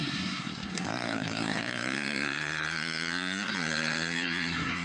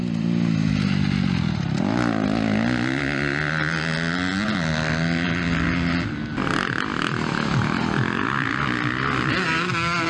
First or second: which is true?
second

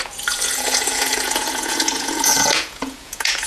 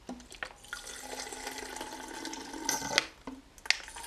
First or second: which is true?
second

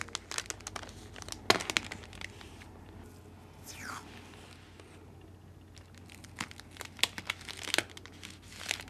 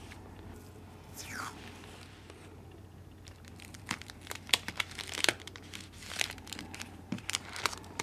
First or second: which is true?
first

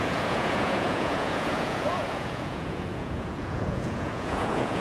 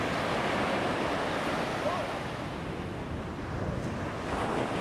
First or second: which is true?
second